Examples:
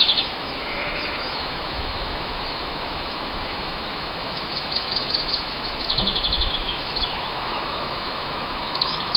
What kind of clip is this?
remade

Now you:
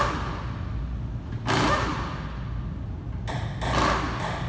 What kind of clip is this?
recorded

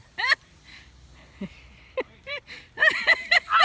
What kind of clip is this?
remade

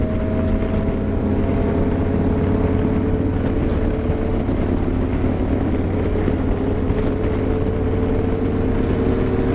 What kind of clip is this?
recorded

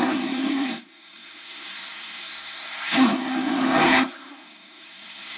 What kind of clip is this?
remade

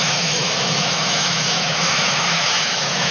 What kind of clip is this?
remade